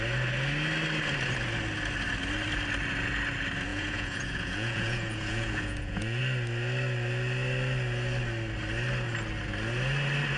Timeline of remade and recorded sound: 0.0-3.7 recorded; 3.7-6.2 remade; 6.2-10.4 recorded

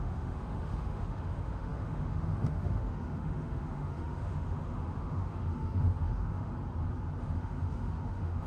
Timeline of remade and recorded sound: 0.0-6.5 remade; 6.5-7.2 recorded; 7.2-8.5 remade

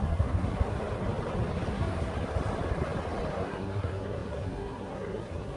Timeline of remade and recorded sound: 0.0-0.8 remade; 0.8-1.7 recorded; 1.7-2.1 remade; 2.1-3.3 recorded; 3.3-5.6 remade

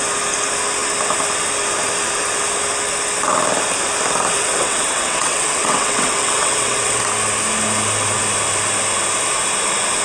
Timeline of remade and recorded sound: 0.0-4.3 recorded; 4.3-7.0 remade; 7.0-10.0 recorded

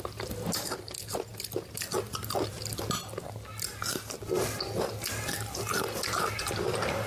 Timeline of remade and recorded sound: 0.0-7.1 recorded

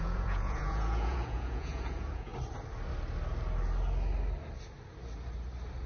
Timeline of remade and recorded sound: 0.0-2.3 remade; 2.3-5.9 recorded

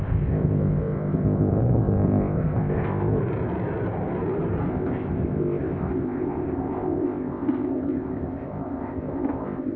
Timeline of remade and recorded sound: 0.0-3.2 remade; 3.2-4.7 recorded; 4.7-9.8 remade

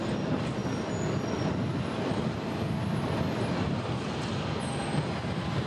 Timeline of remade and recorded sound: 0.0-5.7 recorded